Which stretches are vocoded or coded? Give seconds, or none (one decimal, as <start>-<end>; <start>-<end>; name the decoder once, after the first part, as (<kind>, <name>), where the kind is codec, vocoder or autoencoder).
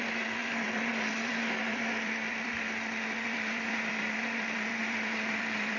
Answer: 0.0-5.8 (vocoder, BigVGAN v2)